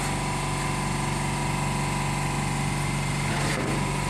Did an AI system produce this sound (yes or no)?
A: no